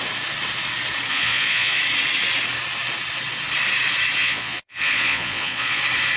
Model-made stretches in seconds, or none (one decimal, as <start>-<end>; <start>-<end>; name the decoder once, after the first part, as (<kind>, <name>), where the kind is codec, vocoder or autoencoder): 1.1-1.8 (vocoder, Vocos); 4.2-5.8